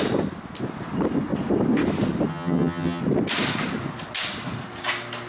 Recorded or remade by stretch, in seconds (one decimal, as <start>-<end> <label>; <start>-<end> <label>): 0.0-2.3 recorded; 2.3-3.0 remade; 3.0-5.3 recorded